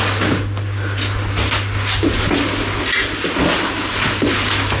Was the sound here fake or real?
real